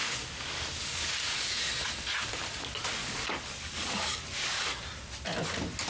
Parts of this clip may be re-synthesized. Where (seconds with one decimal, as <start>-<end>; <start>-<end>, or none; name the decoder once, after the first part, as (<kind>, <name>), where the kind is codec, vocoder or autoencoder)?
0.0-1.7 (codec, DAC); 3.0-4.8